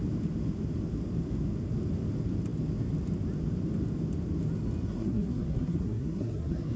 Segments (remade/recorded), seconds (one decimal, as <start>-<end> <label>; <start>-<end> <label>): 0.0-4.9 recorded; 4.9-6.8 remade